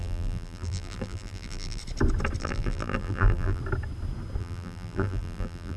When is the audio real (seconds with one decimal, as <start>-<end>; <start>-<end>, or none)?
1.8-2.4; 3.6-4.4